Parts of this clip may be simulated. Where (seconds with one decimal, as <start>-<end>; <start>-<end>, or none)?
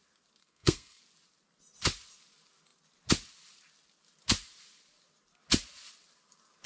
0.4-1.0